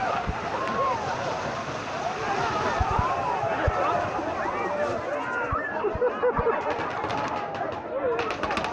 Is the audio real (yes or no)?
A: yes